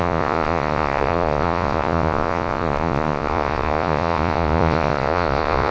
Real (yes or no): no